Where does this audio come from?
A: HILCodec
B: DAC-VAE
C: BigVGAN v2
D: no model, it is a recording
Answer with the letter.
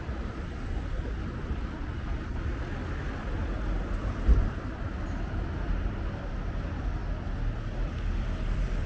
D